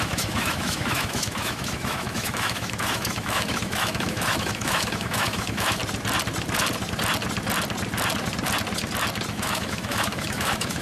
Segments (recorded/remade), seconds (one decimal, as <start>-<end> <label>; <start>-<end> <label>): 0.0-5.8 remade; 5.8-9.3 recorded; 9.3-10.8 remade